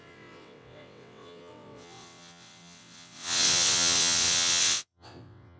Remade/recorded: remade